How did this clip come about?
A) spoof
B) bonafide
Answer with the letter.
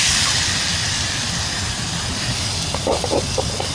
B